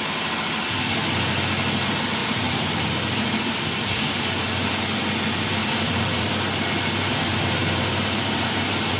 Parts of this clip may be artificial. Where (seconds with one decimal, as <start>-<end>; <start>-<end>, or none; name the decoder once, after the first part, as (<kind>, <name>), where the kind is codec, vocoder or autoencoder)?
2.2-3.6 (vocoder, BigVGAN v2); 5.6-6.3; 7.6-8.6